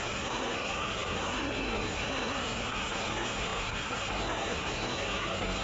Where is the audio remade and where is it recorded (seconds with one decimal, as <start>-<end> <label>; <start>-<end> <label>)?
0.0-5.6 remade